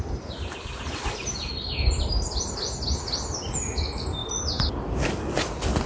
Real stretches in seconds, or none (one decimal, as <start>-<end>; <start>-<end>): 0.0-5.9